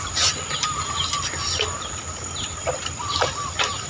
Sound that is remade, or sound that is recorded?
recorded